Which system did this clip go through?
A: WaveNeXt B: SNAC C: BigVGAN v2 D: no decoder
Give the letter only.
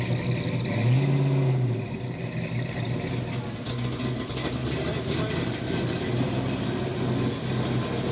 D